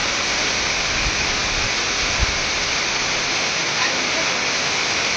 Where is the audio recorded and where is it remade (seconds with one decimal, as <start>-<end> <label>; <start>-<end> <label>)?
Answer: 0.0-5.2 recorded